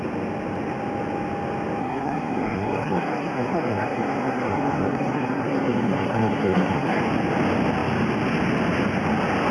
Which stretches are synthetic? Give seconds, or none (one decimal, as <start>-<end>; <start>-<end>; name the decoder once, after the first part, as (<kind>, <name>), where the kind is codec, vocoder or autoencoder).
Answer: 1.8-7.0 (codec, SNAC)